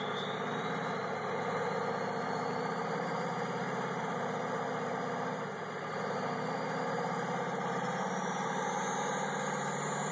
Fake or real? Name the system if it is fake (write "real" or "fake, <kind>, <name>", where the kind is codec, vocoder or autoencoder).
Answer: fake, vocoder, BigVGAN v2